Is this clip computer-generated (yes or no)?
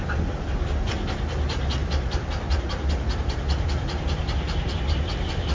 no